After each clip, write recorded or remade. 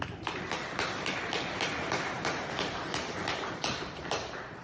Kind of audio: remade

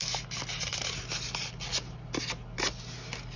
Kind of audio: recorded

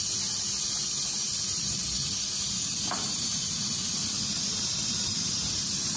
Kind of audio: remade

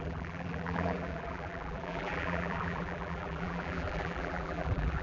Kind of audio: remade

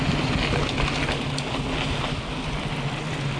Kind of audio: recorded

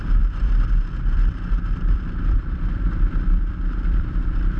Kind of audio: remade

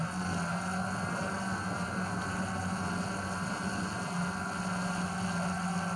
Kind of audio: recorded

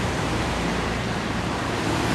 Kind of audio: remade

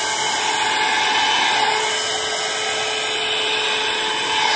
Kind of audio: recorded